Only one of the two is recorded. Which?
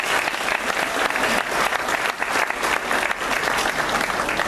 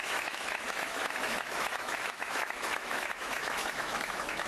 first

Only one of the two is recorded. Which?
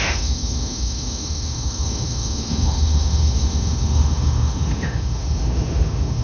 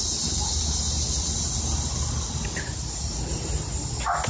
second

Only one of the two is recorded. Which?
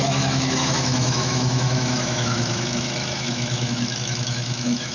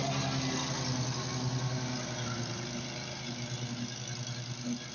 second